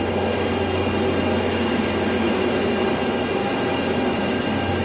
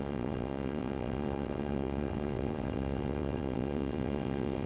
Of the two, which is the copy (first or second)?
second